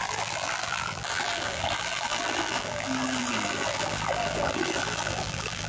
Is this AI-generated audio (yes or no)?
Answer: yes